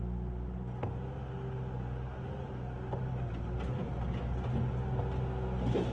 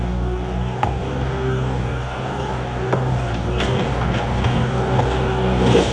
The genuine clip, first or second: first